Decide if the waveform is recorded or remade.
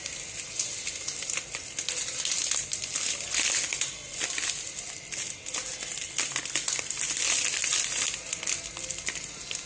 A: recorded